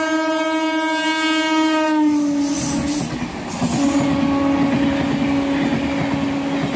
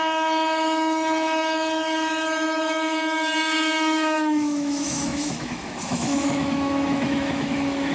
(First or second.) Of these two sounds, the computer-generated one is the second